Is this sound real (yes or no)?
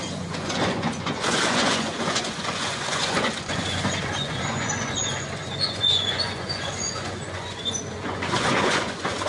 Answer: no